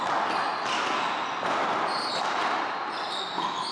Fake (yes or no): no